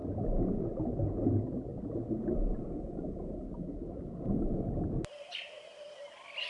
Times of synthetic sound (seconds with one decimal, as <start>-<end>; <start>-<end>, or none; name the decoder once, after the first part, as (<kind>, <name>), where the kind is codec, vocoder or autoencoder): none